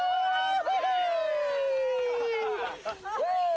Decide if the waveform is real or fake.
real